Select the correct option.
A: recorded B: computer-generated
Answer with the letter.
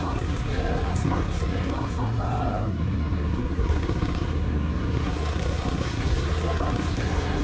B